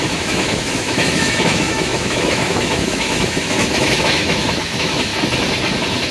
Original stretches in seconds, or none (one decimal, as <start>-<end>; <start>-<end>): 5.1-6.1